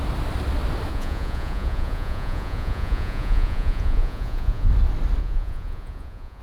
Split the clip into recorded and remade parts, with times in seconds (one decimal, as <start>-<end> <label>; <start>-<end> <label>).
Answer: 0.0-0.9 recorded; 0.9-4.7 remade; 4.7-5.2 recorded; 5.2-6.4 remade